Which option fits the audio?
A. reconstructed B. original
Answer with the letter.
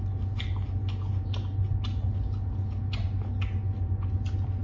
B